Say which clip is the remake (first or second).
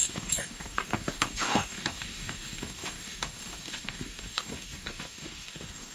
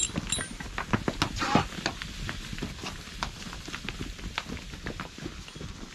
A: first